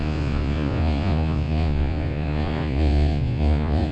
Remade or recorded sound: remade